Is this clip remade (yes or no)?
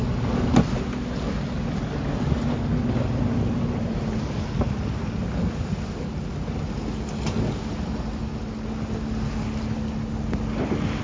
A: no